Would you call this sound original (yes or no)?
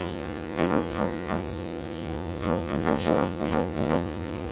no